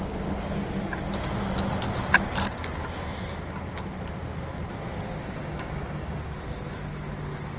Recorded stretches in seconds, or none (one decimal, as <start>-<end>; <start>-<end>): 0.0-5.2; 6.4-7.6